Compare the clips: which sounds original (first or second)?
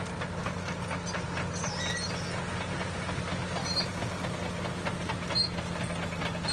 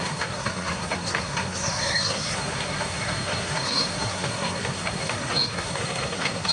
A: first